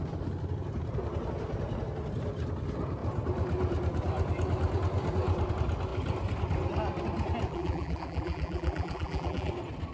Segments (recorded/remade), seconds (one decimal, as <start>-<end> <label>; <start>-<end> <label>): 0.0-7.5 recorded; 7.5-9.5 remade; 9.5-9.9 recorded